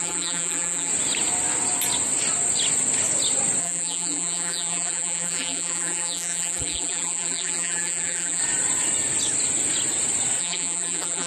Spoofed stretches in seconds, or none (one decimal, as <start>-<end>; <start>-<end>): 0.0-0.9; 3.6-8.4; 10.4-11.3